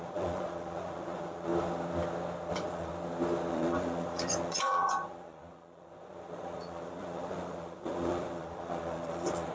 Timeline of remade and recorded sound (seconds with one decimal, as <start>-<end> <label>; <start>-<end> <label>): 0.0-1.5 remade; 1.5-2.5 recorded; 2.5-2.9 remade; 2.9-3.5 recorded; 3.5-9.5 remade